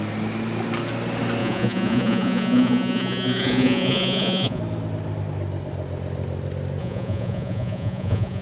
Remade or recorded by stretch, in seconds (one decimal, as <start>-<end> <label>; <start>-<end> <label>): 0.0-1.4 recorded; 1.4-4.6 remade; 4.6-6.8 recorded; 6.8-8.4 remade